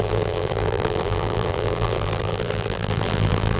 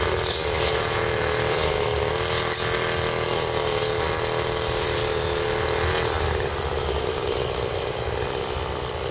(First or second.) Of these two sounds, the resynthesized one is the first